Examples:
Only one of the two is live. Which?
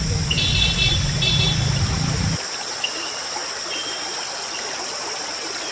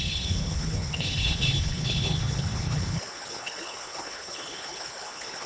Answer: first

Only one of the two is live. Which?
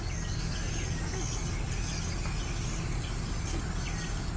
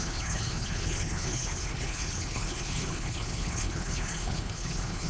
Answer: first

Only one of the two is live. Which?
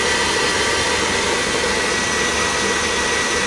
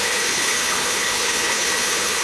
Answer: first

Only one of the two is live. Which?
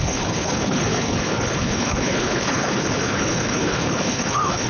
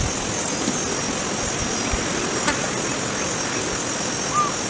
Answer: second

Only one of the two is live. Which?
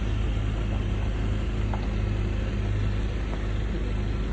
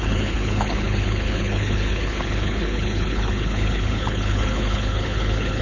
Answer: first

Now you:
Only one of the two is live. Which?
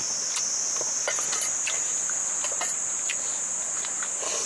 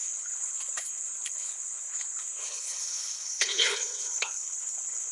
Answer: first